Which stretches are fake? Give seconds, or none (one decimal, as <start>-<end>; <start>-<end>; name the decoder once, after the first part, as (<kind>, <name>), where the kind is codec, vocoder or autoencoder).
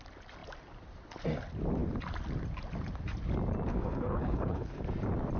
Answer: 3.7-4.8 (codec, HILCodec)